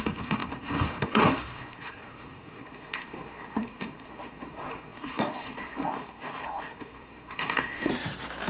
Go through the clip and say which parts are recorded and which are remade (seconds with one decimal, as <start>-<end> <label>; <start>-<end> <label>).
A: 0.0-7.9 remade; 7.9-8.5 recorded